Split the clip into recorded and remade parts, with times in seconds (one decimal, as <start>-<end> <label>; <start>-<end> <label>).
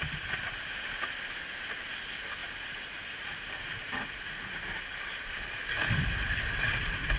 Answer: 0.0-7.2 recorded